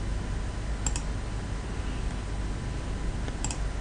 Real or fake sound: real